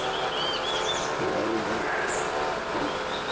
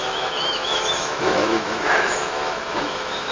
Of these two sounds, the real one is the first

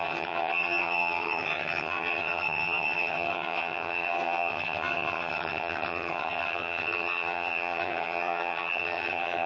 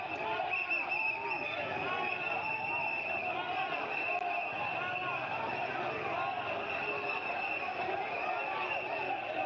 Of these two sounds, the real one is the second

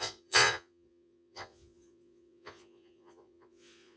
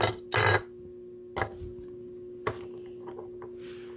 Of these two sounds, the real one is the second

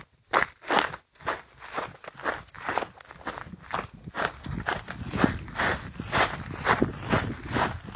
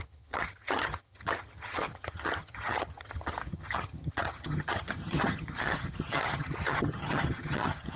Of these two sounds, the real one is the first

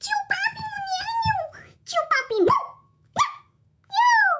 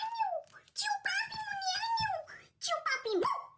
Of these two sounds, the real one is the second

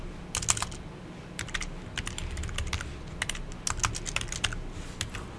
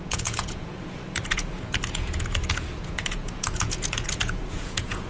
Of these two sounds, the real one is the first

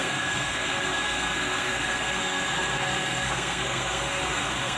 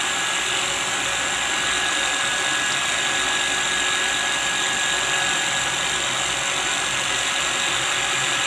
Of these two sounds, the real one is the second